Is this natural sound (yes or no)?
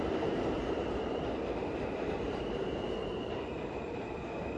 no